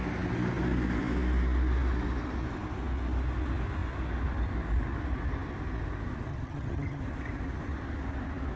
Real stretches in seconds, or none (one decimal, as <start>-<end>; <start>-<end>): 0.0-6.3; 7.0-8.6